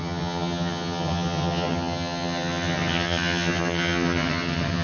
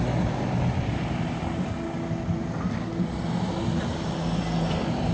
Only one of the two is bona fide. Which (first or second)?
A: second